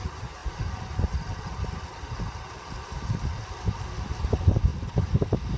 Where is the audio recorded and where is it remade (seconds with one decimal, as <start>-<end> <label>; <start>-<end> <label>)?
0.0-4.7 recorded; 4.7-5.6 remade